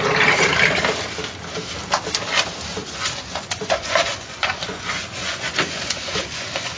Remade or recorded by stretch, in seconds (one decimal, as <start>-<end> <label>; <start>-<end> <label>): 0.0-2.7 recorded; 2.7-6.8 remade